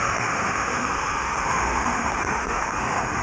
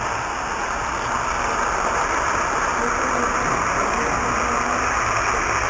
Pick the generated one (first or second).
first